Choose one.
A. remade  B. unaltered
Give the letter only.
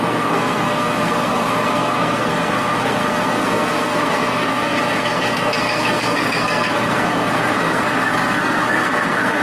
A